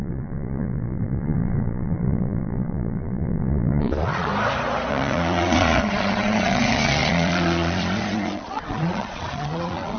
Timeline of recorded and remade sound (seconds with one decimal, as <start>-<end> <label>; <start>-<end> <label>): 0.0-4.3 remade; 4.3-4.9 recorded; 4.9-10.0 remade

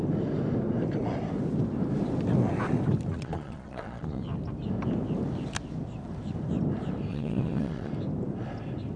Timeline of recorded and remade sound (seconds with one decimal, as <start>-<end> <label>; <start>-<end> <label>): 0.0-3.1 recorded; 3.1-4.2 remade; 4.2-7.1 recorded; 7.1-7.9 remade; 7.9-9.0 recorded

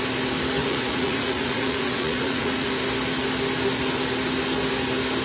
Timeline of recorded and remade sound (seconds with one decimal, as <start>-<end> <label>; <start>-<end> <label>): 0.0-0.6 recorded; 0.6-2.7 remade; 2.7-5.2 recorded

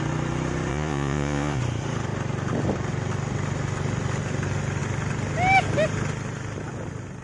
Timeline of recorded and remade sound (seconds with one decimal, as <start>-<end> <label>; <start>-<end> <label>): 0.0-0.7 recorded; 0.7-1.6 remade; 1.6-7.2 recorded

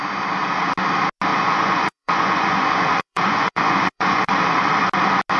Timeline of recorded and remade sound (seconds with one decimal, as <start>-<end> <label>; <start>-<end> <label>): 0.0-1.3 recorded; 1.3-4.3 remade; 4.3-5.4 recorded

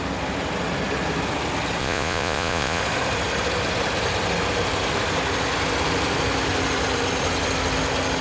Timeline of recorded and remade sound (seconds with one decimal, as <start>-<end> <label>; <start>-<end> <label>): 0.0-1.8 recorded; 1.8-2.8 remade; 2.8-8.2 recorded

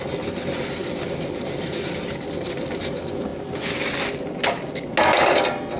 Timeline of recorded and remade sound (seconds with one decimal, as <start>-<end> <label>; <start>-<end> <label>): 0.0-5.8 recorded